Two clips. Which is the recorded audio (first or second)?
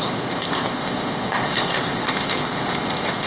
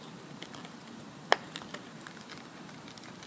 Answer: second